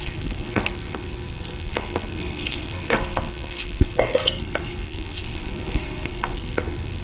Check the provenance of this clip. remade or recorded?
remade